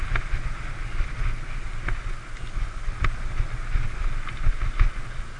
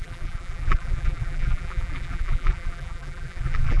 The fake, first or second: second